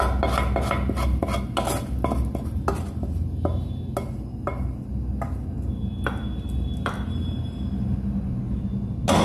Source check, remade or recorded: recorded